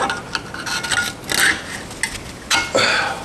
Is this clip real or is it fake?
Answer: real